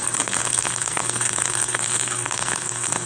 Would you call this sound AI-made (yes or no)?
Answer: yes